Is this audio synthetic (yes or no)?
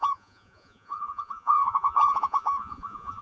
yes